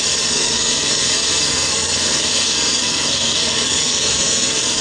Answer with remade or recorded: remade